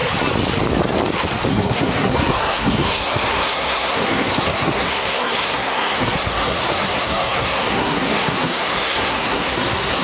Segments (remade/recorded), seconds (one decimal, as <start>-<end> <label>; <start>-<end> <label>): 0.0-1.5 recorded; 1.5-10.0 remade